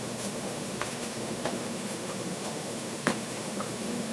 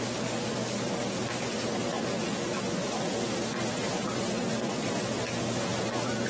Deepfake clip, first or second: first